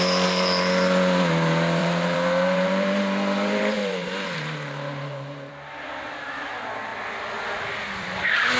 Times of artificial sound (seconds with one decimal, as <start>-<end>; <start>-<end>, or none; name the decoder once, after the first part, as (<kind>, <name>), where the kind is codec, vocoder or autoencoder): 1.8-5.5 (vocoder, BigVGAN v2)

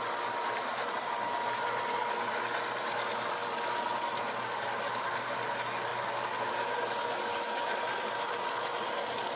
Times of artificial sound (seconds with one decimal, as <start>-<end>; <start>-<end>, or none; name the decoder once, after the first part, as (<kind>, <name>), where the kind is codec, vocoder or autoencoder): 7.3-7.8 (autoencoder, DAC-VAE)

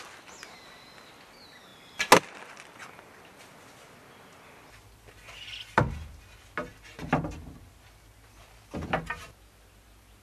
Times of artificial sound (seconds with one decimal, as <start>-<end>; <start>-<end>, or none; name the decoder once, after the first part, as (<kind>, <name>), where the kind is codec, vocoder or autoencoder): none

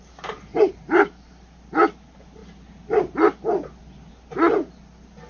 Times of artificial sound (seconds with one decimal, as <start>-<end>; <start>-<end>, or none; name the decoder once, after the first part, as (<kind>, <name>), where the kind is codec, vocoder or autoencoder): 0.5-1.3 (vocoder, BigVGAN v2)